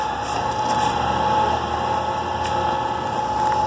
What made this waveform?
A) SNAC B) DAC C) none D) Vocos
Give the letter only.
C